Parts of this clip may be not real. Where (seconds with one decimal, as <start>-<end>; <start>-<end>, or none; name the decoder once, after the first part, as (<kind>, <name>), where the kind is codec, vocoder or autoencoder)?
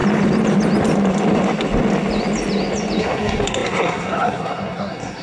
3.0-5.2 (codec, SNAC)